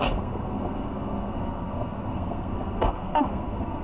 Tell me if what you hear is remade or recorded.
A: remade